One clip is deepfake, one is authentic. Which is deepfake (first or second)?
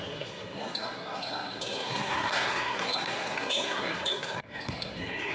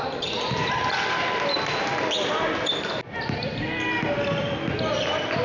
first